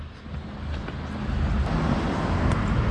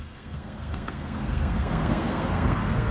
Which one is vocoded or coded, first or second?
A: second